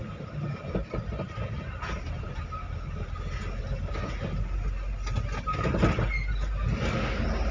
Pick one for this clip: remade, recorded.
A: recorded